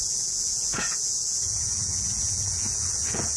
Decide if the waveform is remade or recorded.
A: remade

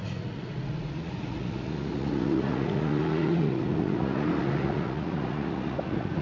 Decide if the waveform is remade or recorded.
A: remade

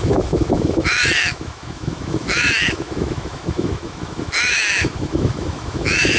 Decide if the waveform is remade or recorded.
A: remade